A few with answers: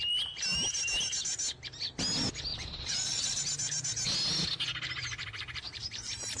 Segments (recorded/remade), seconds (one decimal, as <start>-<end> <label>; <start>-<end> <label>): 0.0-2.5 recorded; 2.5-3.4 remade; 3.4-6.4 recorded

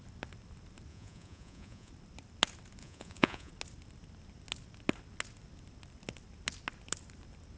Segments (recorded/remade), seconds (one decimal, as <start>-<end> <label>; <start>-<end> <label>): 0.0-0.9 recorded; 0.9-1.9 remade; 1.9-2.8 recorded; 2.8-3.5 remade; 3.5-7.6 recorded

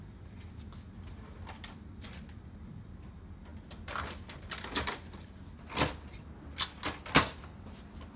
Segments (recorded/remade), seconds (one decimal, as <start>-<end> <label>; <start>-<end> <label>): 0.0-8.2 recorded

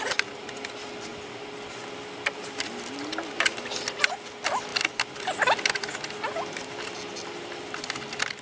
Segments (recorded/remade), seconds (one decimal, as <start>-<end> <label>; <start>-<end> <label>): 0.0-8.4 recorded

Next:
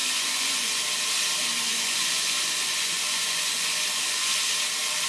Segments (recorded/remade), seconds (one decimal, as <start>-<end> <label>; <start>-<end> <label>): 0.0-0.8 remade; 0.8-1.7 recorded; 1.7-4.5 remade; 4.5-5.1 recorded

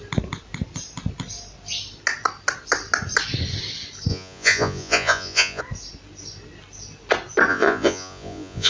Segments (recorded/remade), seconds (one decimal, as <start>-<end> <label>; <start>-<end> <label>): 0.0-4.1 recorded; 4.1-5.6 remade; 5.6-7.5 recorded; 7.5-8.7 remade

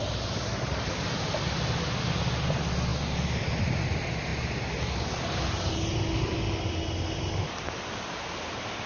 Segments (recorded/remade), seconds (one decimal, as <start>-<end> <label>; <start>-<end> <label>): 0.0-8.9 recorded